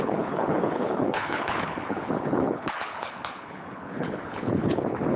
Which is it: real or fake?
fake